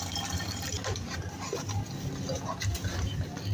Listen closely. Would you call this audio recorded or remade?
recorded